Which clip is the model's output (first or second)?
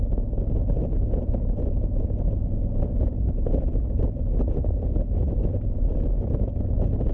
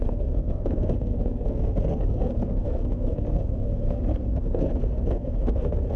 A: second